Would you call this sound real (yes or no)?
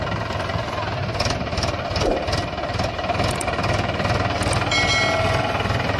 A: yes